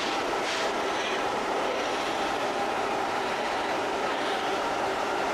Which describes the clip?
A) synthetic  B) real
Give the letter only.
A